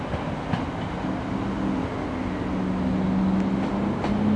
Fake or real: real